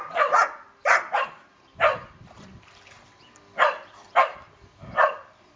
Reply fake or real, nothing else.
fake